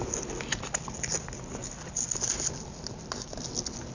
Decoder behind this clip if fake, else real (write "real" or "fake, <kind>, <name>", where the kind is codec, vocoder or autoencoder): real